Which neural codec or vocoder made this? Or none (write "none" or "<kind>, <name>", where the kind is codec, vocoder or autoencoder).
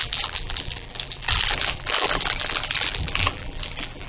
vocoder, BigVGAN v2